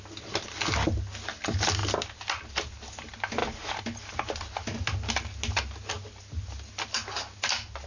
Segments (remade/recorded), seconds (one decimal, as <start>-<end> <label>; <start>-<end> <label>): 0.0-7.9 recorded